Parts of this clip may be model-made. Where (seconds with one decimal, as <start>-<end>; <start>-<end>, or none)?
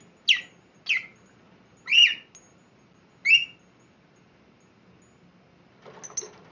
none